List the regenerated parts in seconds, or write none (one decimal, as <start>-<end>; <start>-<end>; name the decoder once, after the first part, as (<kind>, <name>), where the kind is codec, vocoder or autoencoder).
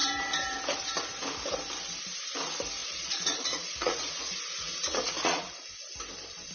2.8-5.7 (vocoder, Vocos)